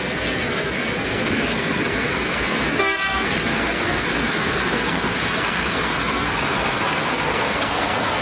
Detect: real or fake fake